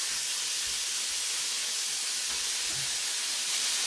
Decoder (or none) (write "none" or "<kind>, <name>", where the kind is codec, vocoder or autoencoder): none